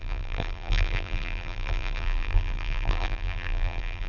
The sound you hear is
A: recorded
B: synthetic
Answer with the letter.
B